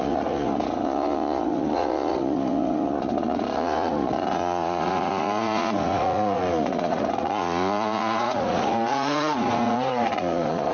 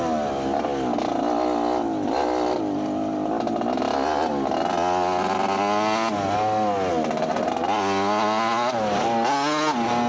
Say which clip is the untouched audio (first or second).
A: second